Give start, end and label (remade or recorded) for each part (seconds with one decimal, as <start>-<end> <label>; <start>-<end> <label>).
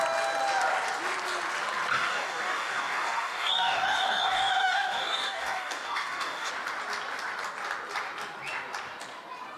0.0-1.9 recorded; 1.9-6.5 remade; 6.5-9.6 recorded